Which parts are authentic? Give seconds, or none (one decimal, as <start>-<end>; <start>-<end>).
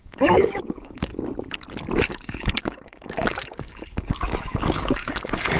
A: 1.1-2.1